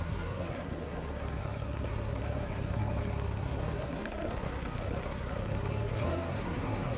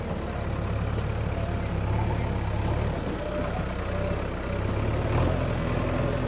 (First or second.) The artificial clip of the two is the first